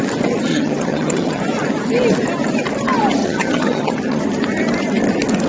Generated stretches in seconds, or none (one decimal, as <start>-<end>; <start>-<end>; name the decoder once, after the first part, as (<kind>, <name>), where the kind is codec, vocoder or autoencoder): 0.5-1.4 (vocoder, HiFi-GAN); 3.2-4.2